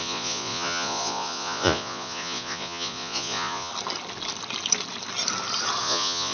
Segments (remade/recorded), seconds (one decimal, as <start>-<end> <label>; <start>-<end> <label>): 0.0-3.7 remade; 3.7-5.8 recorded; 5.8-6.3 remade